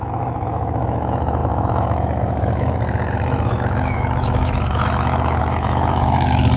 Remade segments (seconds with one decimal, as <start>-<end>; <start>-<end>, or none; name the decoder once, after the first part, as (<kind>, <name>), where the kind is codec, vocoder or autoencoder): 0.0-6.6 (autoencoder, DAC-VAE)